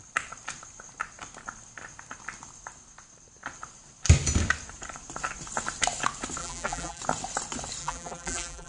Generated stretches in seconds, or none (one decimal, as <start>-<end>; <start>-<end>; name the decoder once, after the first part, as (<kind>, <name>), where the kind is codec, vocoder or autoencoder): 6.4-7.0 (vocoder, BigVGAN v2); 7.8-8.7